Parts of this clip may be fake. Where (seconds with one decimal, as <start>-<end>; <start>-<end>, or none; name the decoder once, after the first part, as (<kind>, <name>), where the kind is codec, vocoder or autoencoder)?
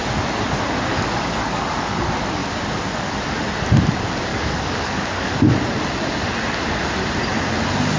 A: 0.9-2.0 (codec, DAC); 4.3-5.5